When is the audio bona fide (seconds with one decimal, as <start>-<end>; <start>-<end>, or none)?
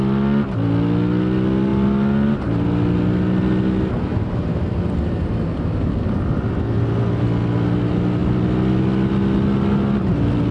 0.0-10.5